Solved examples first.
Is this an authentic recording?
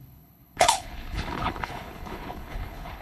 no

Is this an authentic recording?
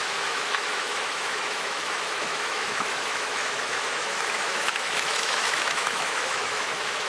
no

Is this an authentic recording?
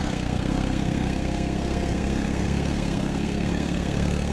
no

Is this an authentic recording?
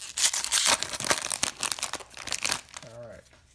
yes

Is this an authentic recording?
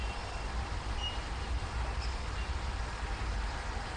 yes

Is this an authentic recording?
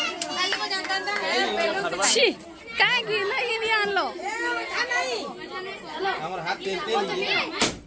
yes